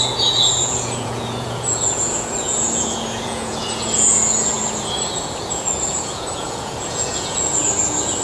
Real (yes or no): no